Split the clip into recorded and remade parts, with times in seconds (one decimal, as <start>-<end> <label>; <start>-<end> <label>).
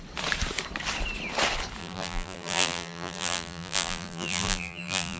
0.0-1.8 recorded; 1.8-5.2 remade